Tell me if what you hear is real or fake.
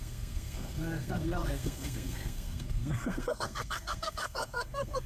fake